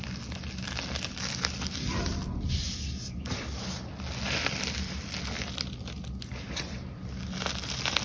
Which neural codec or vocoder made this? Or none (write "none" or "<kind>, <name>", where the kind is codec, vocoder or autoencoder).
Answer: none